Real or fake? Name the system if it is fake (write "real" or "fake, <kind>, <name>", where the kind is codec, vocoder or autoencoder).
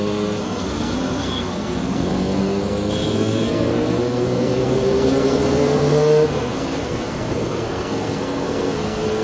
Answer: fake, codec, SNAC